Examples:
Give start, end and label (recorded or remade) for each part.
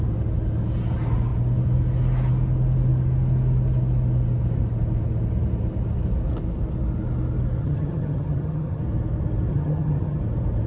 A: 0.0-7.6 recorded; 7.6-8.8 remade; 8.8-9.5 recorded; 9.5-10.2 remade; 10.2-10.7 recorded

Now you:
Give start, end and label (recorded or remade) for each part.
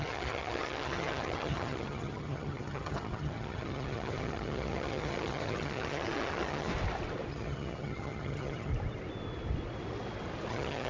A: 0.0-6.7 remade; 6.7-7.3 recorded; 7.3-8.7 remade; 8.7-10.5 recorded; 10.5-10.9 remade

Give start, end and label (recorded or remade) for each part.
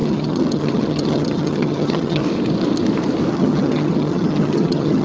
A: 0.0-2.2 remade; 2.2-3.3 recorded; 3.3-5.0 remade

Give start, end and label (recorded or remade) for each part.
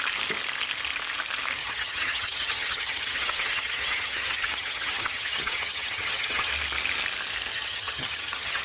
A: 0.0-1.6 recorded; 1.6-6.5 remade; 6.5-7.5 recorded; 7.5-8.6 remade